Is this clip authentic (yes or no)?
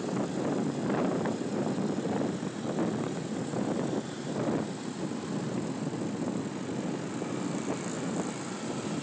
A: yes